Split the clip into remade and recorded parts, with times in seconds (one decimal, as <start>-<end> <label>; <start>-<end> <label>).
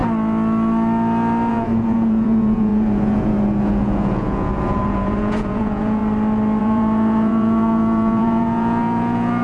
0.0-1.5 recorded; 1.5-6.0 remade; 6.0-6.6 recorded; 6.6-9.4 remade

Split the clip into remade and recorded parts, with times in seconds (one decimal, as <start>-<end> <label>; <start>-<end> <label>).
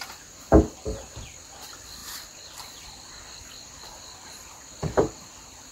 0.0-5.7 remade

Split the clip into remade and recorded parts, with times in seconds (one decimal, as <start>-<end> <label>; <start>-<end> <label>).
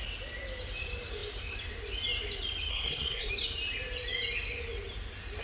0.0-2.7 recorded; 2.7-3.3 remade; 3.3-5.4 recorded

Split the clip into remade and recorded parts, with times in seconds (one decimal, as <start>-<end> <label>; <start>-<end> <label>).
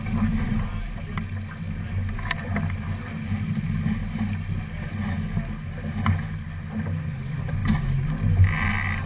0.0-9.1 recorded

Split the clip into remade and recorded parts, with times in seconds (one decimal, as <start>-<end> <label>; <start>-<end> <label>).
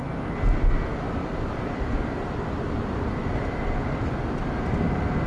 0.0-0.9 recorded; 0.9-4.1 remade; 4.1-5.3 recorded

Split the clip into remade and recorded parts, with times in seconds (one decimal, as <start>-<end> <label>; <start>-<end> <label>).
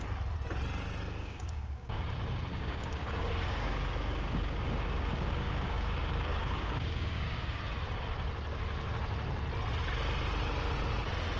0.0-1.2 recorded; 1.2-2.1 remade; 2.1-2.5 recorded; 2.5-7.6 remade; 7.6-11.4 recorded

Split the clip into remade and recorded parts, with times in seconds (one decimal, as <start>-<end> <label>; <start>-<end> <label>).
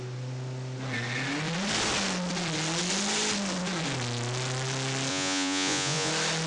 0.0-5.1 recorded; 5.1-6.1 remade; 6.1-6.5 recorded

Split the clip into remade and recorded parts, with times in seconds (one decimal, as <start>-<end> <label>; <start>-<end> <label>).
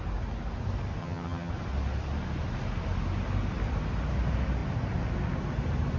0.0-1.0 recorded; 1.0-1.5 remade; 1.5-6.0 recorded